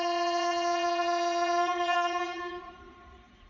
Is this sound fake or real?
fake